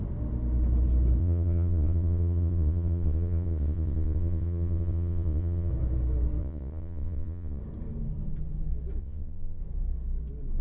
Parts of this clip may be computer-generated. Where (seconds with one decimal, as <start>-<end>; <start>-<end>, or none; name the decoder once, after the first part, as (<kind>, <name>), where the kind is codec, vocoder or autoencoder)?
1.2-5.7 (vocoder, Vocos); 6.4-7.6; 9.0-9.6